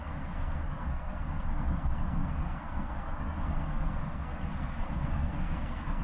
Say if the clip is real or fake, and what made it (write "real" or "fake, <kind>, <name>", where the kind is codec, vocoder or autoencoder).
fake, codec, SNAC